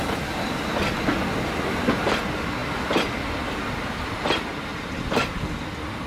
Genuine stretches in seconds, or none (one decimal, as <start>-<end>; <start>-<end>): 0.0-6.1